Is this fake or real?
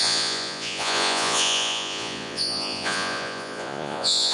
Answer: fake